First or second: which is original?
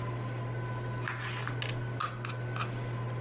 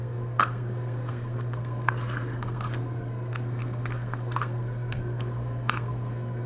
first